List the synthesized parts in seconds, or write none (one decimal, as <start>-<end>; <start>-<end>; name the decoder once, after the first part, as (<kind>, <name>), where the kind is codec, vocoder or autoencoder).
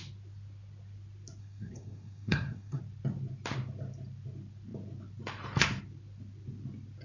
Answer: 1.4-2.8 (codec, SNAC)